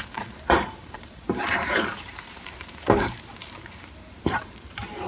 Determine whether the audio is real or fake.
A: fake